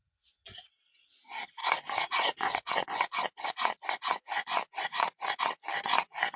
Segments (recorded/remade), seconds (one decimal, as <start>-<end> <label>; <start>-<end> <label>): 0.0-0.6 remade; 0.6-1.6 recorded; 1.6-5.4 remade; 5.4-6.4 recorded